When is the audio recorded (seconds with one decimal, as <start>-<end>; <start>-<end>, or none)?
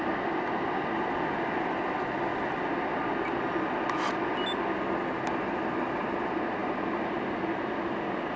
0.0-8.4